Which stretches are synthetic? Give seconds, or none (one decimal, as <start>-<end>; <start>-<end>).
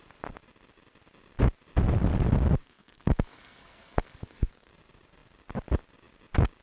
2.6-4.7